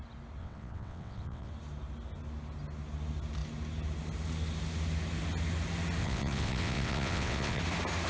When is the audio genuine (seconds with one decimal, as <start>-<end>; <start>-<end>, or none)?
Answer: 0.0-0.4; 1.5-6.0; 7.6-8.1